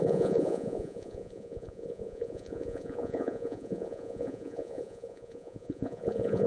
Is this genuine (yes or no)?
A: no